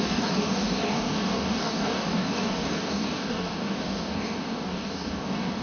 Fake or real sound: fake